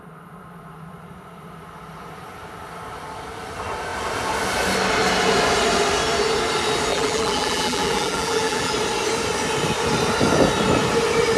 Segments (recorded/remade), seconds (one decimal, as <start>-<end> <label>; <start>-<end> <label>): 0.0-6.9 recorded; 6.9-8.7 remade; 8.7-11.4 recorded